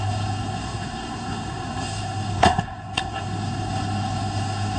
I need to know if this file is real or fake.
fake